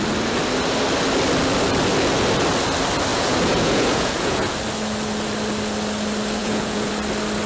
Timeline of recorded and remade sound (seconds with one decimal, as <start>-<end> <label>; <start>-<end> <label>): 0.0-3.1 recorded; 3.1-4.5 remade; 4.5-6.4 recorded; 6.4-6.9 remade; 6.9-7.5 recorded